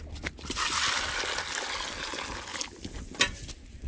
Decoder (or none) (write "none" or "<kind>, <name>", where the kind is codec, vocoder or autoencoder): none